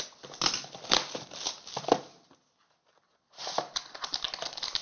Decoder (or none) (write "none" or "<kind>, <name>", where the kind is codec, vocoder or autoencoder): none